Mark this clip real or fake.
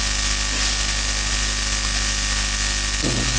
real